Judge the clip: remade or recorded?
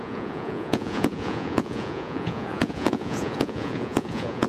remade